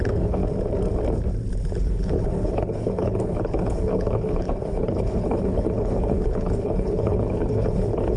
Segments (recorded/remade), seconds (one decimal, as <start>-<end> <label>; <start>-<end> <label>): 0.0-0.4 remade; 0.4-1.7 recorded; 1.7-8.2 remade